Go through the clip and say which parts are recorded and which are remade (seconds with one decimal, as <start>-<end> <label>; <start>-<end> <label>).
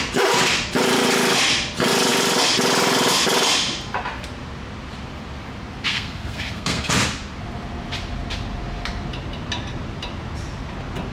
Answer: 0.0-5.9 recorded; 5.9-6.9 remade; 6.9-11.1 recorded